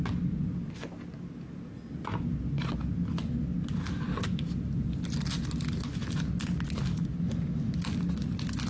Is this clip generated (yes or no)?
no